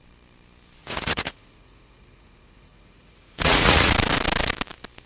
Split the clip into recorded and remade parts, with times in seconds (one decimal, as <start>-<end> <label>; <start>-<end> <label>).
0.0-0.8 recorded; 0.8-3.9 remade; 3.9-5.1 recorded